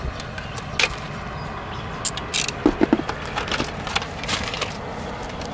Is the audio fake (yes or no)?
no